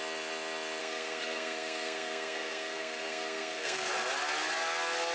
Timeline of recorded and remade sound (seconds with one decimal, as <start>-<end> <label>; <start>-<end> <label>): 0.0-0.8 recorded; 0.8-3.9 remade; 3.9-5.1 recorded